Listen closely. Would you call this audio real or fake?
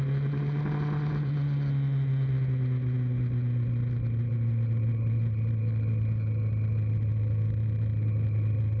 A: real